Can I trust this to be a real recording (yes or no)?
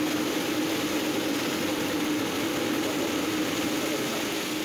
yes